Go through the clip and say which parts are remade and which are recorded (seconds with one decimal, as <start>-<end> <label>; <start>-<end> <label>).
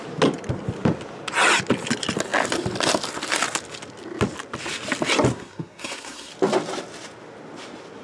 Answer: 0.0-5.3 recorded; 5.3-6.3 remade; 6.3-8.0 recorded